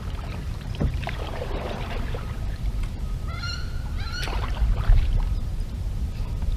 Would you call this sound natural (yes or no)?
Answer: no